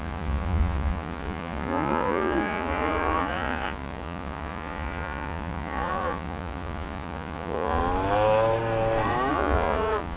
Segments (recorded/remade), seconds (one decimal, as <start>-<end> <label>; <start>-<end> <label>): 0.0-7.8 remade; 7.8-9.3 recorded; 9.3-10.2 remade